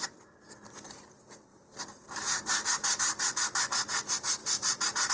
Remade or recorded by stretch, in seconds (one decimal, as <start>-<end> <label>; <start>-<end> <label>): 0.0-1.5 recorded; 1.5-2.5 remade; 2.5-4.4 recorded; 4.4-5.1 remade